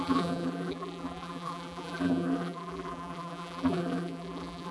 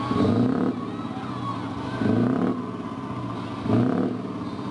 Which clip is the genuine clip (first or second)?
second